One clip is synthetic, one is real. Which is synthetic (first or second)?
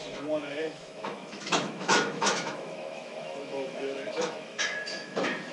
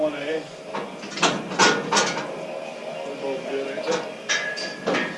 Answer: first